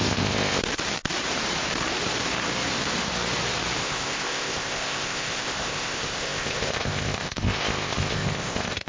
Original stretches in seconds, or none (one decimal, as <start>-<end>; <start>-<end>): 0.6-3.8